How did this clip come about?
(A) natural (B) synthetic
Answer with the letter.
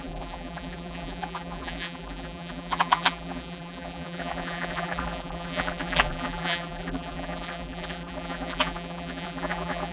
B